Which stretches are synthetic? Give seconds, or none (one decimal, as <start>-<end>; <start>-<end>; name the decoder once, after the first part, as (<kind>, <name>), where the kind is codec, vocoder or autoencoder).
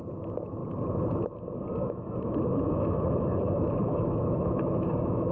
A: 0.0-0.6 (autoencoder, DAC-VAE); 1.7-5.3